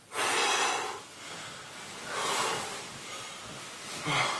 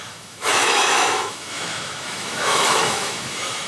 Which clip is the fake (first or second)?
second